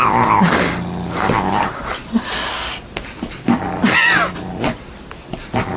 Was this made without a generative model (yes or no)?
yes